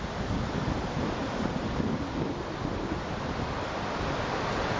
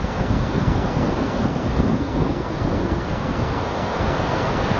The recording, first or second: first